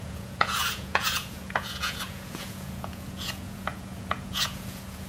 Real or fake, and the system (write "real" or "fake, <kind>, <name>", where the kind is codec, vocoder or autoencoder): fake, vocoder, Vocos